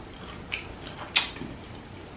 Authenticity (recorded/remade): recorded